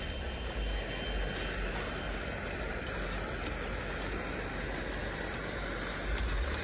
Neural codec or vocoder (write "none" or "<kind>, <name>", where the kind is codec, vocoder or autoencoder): none